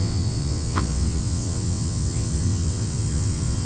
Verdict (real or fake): fake